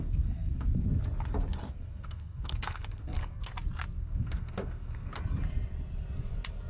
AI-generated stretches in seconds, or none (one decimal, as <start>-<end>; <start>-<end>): 0.0-0.9; 1.7-3.5; 4.0-5.1